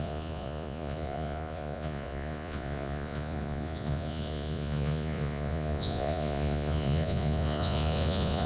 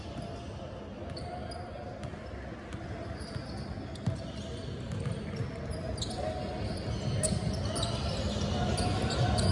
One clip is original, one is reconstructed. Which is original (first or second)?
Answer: second